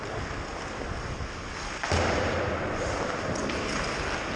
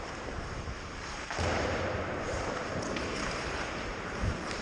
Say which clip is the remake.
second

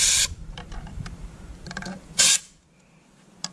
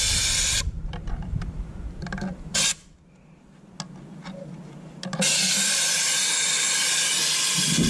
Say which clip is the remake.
first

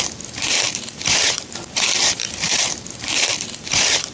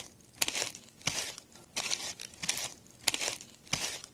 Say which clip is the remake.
first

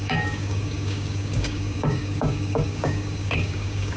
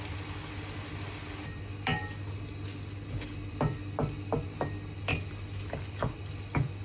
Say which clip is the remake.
first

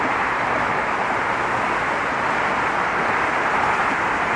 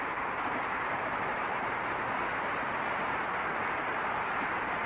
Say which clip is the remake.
second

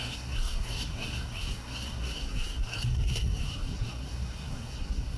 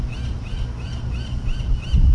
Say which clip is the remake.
first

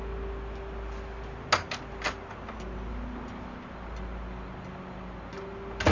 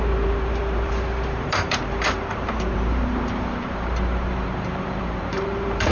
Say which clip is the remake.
second